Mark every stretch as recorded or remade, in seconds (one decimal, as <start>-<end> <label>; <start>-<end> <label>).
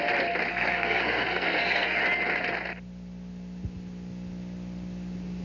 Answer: 0.0-0.5 recorded; 0.5-2.0 remade; 2.0-5.4 recorded